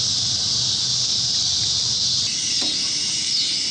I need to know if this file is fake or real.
real